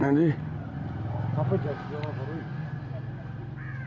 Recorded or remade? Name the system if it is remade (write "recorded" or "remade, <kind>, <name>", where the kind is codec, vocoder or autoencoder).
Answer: recorded